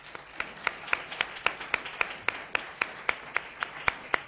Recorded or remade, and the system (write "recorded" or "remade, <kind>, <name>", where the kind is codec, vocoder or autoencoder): recorded